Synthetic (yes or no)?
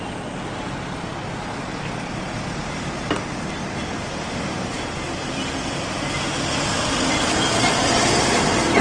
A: no